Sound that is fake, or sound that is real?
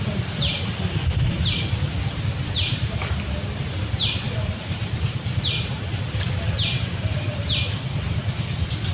fake